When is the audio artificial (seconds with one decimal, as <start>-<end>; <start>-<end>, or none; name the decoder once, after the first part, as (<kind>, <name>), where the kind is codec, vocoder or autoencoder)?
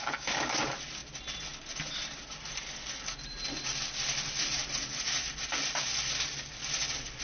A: 0.0-0.6 (codec, DAC)